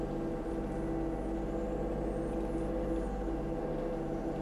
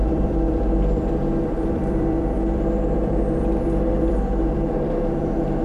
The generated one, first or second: second